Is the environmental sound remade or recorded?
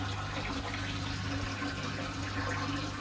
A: recorded